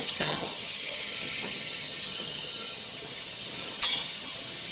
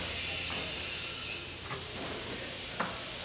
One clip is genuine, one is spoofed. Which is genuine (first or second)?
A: second